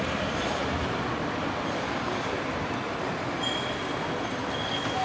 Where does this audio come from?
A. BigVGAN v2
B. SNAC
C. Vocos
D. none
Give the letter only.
D